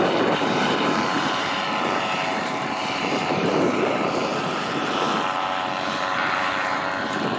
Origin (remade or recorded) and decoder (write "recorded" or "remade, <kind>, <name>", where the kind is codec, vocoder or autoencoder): remade, vocoder, BigVGAN v2